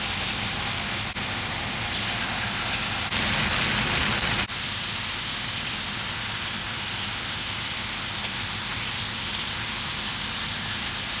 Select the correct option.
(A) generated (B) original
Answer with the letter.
B